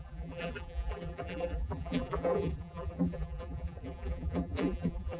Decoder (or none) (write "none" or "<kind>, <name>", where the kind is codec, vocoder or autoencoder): vocoder, BigVGAN v2